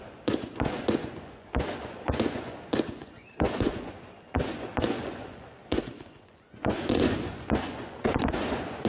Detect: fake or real fake